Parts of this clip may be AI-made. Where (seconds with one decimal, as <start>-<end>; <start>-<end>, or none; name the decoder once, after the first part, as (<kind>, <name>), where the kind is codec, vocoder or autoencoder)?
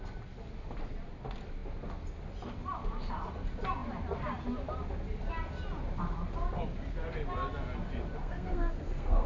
8.2-9.3 (codec, SNAC)